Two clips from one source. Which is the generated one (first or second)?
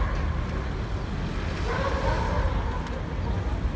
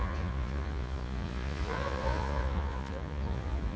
second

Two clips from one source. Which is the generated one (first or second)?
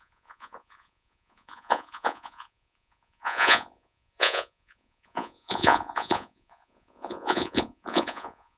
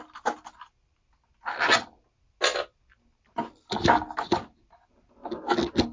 first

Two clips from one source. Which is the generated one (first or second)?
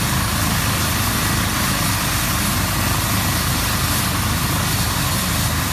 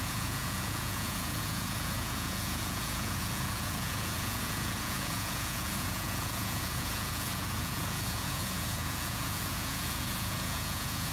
second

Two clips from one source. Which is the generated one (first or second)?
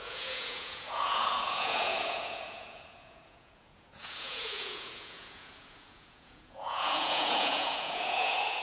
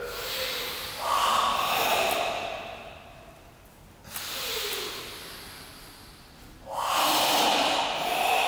first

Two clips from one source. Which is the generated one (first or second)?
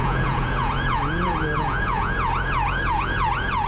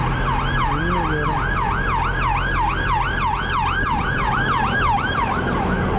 first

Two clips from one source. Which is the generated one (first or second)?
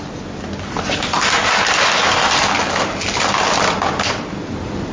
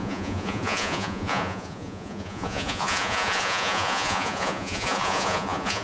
second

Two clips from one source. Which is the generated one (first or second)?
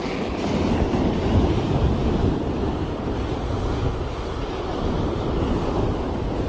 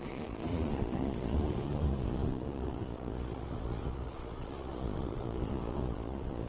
second